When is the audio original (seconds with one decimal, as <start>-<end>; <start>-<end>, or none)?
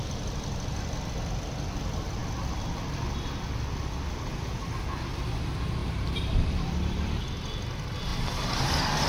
0.0-5.8; 7.1-9.1